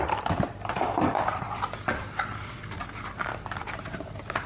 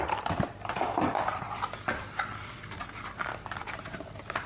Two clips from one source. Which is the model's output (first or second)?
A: first